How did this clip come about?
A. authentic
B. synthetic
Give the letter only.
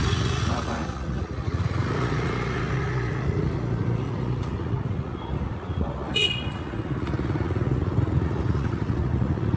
B